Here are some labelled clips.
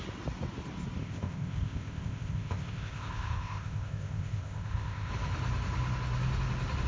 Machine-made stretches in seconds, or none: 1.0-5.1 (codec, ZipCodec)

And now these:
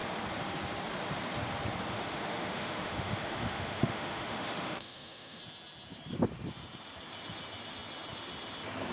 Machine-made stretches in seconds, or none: 1.9-5.4 (autoencoder, DAC-VAE)

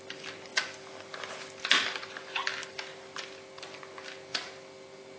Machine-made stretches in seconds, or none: none

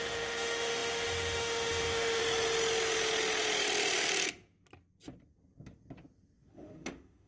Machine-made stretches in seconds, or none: 0.0-2.2 (autoencoder, DAC-VAE); 6.5-7.3

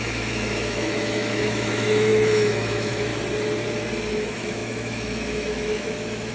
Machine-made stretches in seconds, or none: 0.0-3.1 (autoencoder, DAC-VAE); 4.1-6.3

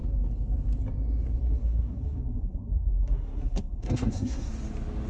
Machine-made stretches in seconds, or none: 1.4-4.5 (codec, SNAC)

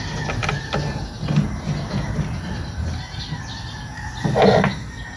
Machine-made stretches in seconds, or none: none

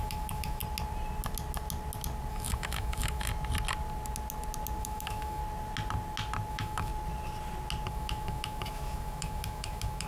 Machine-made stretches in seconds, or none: 0.0-0.6 (autoencoder, DAC-VAE); 2.3-3.3; 4.8-5.4; 6.5-6.9; 7.9-10.1